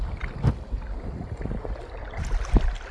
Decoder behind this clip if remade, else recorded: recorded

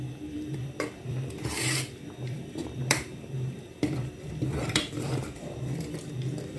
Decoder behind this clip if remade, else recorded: remade, vocoder, BigVGAN v2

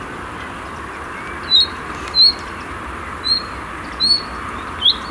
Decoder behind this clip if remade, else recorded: recorded